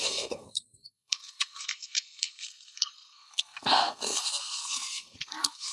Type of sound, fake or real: fake